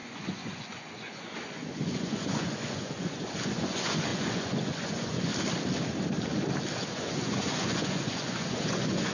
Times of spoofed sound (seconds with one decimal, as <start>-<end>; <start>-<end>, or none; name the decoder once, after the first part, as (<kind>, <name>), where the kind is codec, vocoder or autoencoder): 0.0-5.3 (vocoder, Vocos); 6.9-9.1